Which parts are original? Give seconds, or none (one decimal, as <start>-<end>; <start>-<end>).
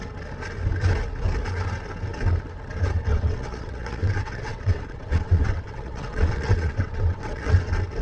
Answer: 0.0-3.1; 7.5-8.0